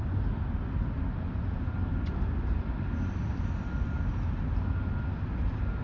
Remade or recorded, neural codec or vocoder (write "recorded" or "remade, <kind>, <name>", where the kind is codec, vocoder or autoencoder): recorded